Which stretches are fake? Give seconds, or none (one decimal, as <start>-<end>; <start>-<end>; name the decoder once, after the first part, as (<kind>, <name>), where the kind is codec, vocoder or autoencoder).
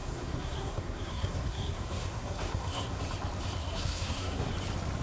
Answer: 0.0-3.0 (codec, SNAC); 3.6-4.5